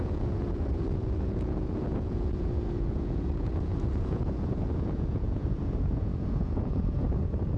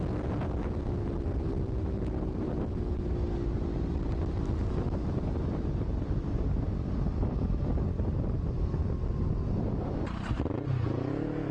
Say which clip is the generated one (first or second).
first